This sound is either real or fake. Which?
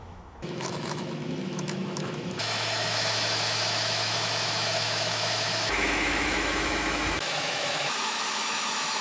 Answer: fake